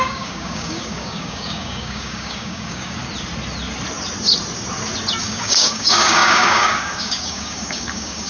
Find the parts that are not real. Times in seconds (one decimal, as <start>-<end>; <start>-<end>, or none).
0.0-3.0; 5.2-8.3